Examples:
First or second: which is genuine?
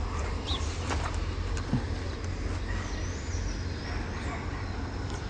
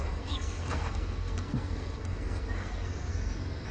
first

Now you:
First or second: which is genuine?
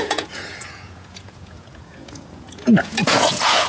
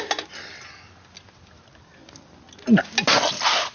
second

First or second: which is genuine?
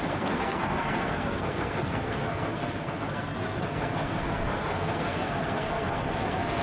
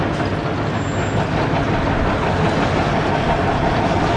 second